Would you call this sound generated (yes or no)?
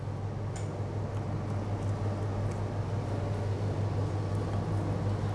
no